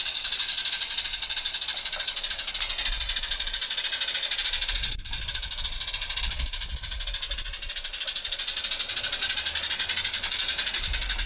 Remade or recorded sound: recorded